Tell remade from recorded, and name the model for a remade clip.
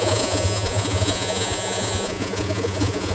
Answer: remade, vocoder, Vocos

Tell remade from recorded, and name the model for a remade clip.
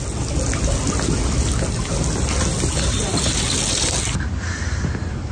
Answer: recorded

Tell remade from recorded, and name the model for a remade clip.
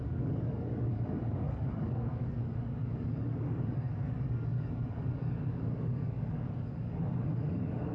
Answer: remade, codec, DAC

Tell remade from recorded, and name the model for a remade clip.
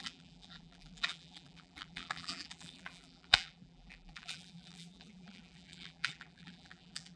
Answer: remade, vocoder, BigVGAN v2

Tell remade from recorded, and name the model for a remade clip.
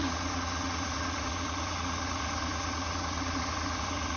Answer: remade, vocoder, Vocos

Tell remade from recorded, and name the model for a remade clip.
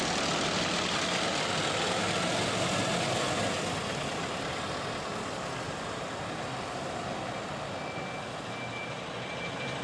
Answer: recorded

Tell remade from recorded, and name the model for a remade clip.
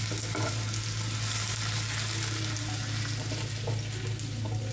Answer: recorded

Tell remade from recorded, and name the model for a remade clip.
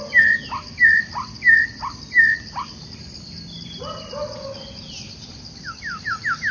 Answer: recorded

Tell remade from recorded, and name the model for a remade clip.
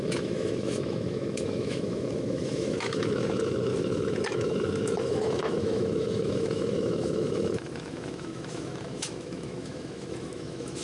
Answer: remade, autoencoder, DAC-VAE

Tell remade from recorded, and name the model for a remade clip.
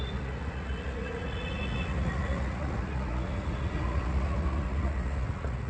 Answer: remade, vocoder, Vocos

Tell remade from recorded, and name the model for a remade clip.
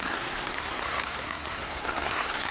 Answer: remade, codec, SNAC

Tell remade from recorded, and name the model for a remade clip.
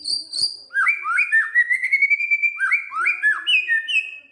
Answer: recorded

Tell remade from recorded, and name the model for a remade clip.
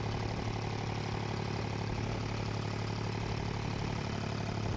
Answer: recorded